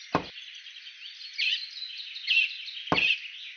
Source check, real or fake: real